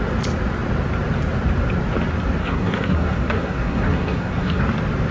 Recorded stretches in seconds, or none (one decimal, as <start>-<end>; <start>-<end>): 0.0-2.4; 4.6-5.1

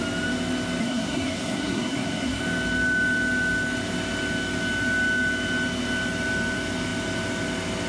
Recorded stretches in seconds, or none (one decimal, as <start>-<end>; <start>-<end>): 0.0-0.8; 2.4-7.9

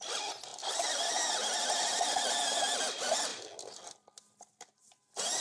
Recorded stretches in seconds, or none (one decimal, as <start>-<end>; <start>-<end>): 0.0-5.4

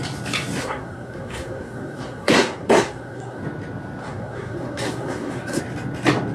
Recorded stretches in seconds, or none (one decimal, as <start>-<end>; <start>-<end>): 0.0-0.6; 3.4-4.0; 5.6-6.3